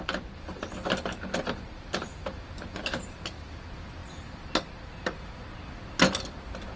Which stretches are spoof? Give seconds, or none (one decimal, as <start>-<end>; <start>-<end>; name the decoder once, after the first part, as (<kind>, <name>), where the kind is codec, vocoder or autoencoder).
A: none

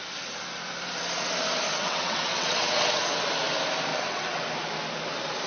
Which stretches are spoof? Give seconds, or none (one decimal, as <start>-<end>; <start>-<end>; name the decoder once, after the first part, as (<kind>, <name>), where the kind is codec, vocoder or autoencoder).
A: 1.7-3.0 (vocoder, WaveNeXt); 3.9-4.4

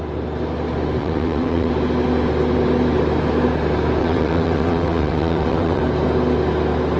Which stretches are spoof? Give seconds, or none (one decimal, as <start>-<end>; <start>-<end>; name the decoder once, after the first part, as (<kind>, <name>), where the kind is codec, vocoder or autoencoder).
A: 1.0-1.7 (vocoder, WaveNeXt); 4.0-5.8

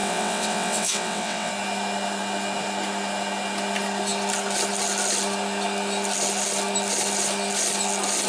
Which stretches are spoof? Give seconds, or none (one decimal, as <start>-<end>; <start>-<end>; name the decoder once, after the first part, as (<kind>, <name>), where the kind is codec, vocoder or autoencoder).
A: 0.0-1.5 (vocoder, WaveNeXt)

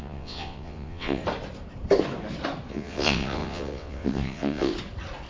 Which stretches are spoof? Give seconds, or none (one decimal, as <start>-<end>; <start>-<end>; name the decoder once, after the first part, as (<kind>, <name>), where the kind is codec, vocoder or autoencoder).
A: 0.0-1.2 (vocoder, WaveNeXt); 2.7-4.7

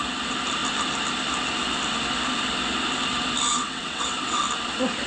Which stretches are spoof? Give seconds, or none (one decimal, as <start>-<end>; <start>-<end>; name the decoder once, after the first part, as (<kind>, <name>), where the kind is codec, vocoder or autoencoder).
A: 3.5-4.4 (vocoder, WaveNeXt)

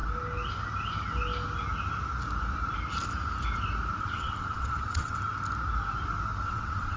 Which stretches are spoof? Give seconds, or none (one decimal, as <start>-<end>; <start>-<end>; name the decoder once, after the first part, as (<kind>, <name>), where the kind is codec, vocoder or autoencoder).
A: 4.0-5.3 (vocoder, WaveNeXt); 6.4-7.0

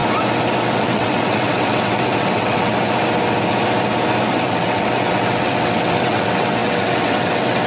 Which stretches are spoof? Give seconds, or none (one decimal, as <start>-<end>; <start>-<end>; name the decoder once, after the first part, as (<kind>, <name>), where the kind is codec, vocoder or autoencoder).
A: 0.6-2.7 (vocoder, WaveNeXt); 4.3-7.7